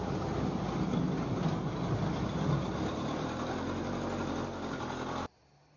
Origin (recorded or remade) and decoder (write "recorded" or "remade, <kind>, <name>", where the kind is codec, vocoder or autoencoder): recorded